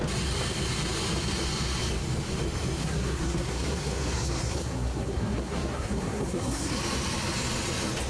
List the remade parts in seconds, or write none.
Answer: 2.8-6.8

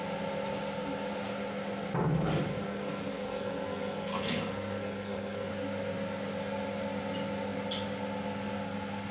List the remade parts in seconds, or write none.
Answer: 2.5-5.5

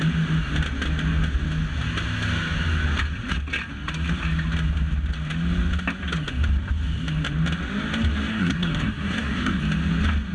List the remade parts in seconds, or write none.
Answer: 8.3-9.6

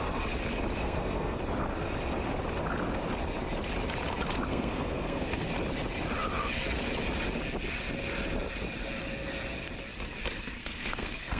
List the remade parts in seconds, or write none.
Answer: 0.8-1.4; 4.5-5.5; 10.6-11.4

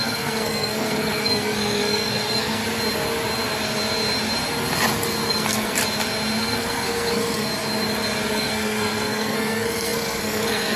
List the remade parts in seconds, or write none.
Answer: 0.0-2.6; 5.3-5.8; 6.4-7.5; 8.3-10.8

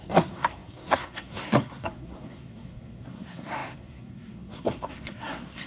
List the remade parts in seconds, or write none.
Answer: 0.0-5.7

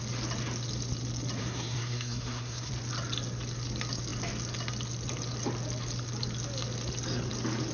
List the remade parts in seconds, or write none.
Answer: 1.4-2.7